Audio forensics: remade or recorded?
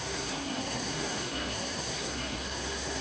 remade